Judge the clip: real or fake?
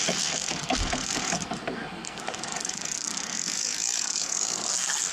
fake